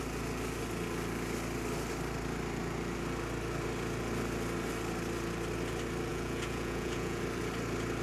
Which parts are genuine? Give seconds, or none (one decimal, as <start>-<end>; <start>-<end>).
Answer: 0.0-6.1; 7.2-8.0